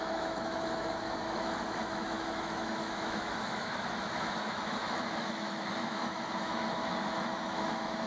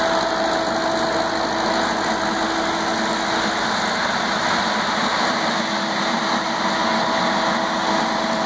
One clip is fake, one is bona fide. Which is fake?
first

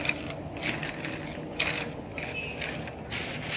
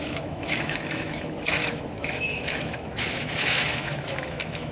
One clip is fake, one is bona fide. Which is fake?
second